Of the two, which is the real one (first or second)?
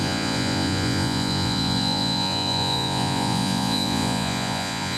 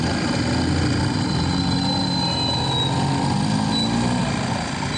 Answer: second